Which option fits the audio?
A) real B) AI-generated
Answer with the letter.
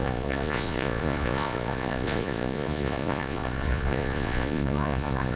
B